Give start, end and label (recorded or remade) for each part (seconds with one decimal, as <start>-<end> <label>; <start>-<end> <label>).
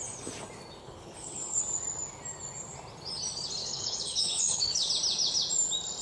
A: 0.0-0.8 recorded; 0.8-1.6 remade; 1.6-3.6 recorded; 3.6-4.9 remade; 4.9-6.0 recorded